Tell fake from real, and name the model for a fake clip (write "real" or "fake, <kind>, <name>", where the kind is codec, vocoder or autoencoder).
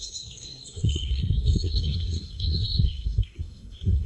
fake, codec, SNAC